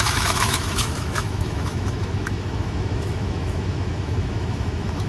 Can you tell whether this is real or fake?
fake